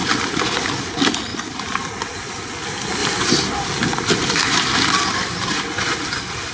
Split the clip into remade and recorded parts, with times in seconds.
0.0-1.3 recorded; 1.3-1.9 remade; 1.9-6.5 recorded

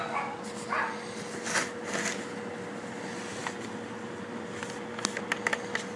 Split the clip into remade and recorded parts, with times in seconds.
0.0-6.0 recorded

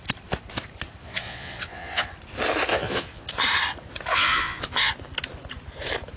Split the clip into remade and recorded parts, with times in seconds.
0.0-1.0 recorded; 1.0-2.1 remade; 2.1-2.7 recorded; 2.7-3.3 remade; 3.3-4.1 recorded; 4.1-4.9 remade; 4.9-6.2 recorded